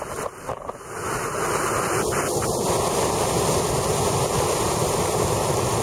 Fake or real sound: real